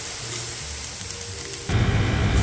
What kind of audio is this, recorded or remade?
recorded